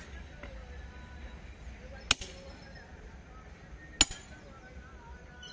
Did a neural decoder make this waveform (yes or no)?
no